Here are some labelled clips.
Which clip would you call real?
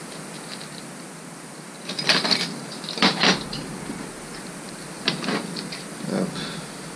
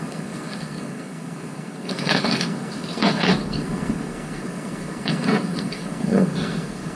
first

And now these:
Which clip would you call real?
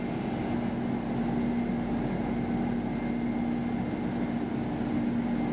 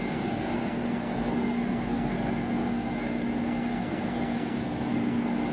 first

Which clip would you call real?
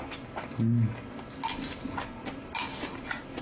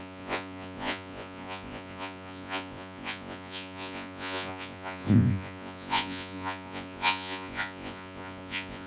first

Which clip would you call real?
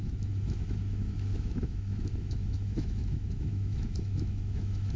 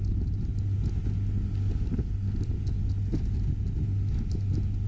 second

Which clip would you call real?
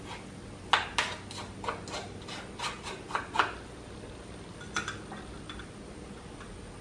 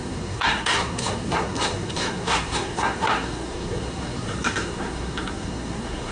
first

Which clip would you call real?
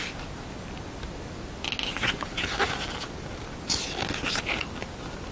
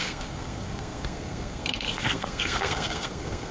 first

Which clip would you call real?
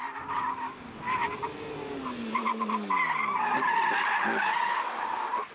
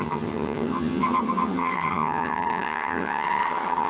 first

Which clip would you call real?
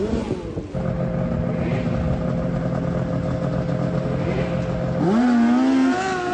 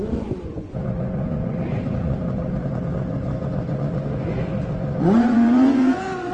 first